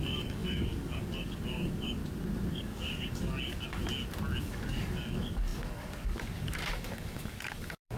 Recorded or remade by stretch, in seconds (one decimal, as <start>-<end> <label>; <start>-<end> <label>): 0.0-2.0 remade; 2.0-2.5 recorded; 2.5-3.8 remade; 3.8-4.4 recorded; 4.4-8.0 remade